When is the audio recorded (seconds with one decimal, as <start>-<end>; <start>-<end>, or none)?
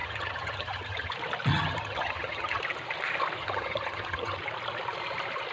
1.1-1.5; 2.6-3.4; 4.4-5.5